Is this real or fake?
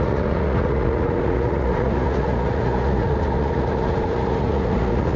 fake